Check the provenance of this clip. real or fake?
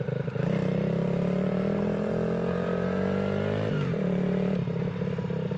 fake